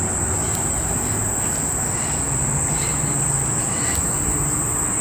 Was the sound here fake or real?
real